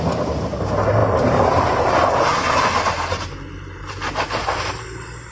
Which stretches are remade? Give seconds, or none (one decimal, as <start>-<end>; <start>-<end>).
1.0-1.8